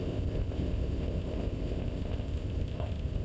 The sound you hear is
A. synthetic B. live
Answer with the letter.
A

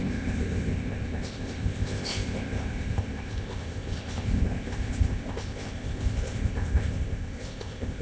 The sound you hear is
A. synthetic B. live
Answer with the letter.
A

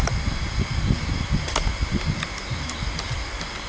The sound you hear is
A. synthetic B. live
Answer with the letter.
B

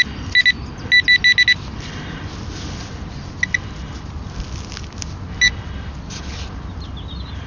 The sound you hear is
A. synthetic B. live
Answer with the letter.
B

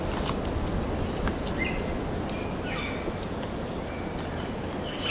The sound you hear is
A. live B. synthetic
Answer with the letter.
A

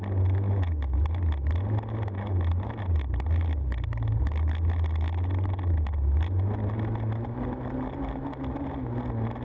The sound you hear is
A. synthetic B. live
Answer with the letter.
B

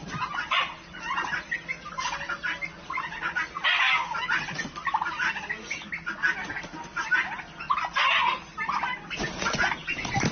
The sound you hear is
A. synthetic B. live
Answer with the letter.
B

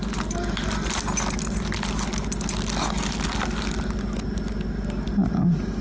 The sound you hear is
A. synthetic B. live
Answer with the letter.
B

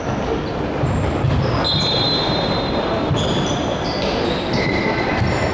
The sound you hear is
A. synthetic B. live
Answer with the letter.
B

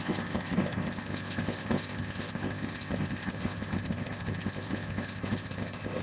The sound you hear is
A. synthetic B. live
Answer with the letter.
A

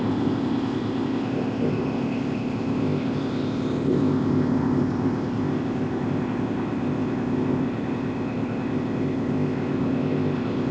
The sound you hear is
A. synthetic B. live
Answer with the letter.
A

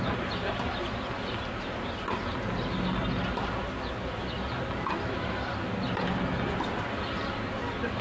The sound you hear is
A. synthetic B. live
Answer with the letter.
B